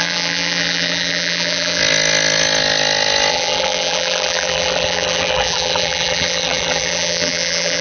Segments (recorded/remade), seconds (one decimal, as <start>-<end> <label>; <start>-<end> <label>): 0.0-1.8 remade; 1.8-3.3 recorded; 3.3-7.8 remade